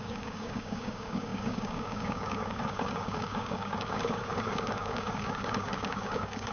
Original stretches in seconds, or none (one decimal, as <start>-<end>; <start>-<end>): none